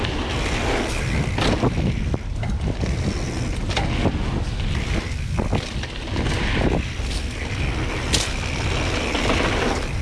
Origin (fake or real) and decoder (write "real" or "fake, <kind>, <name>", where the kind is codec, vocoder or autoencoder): real